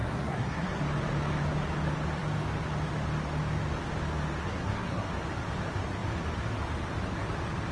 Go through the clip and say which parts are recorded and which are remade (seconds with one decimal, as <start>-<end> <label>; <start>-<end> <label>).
0.0-0.8 remade; 0.8-4.4 recorded; 4.4-5.1 remade; 5.1-7.7 recorded